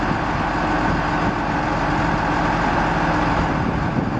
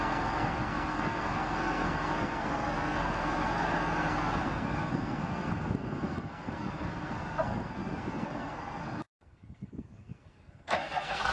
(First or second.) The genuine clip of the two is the first